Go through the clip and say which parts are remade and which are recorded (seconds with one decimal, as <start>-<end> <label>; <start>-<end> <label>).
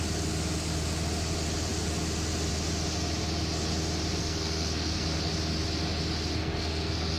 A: 0.0-4.2 recorded; 4.2-5.3 remade; 5.3-6.4 recorded; 6.4-7.2 remade